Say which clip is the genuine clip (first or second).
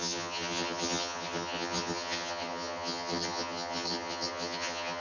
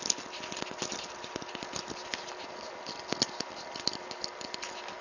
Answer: second